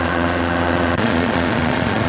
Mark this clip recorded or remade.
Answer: remade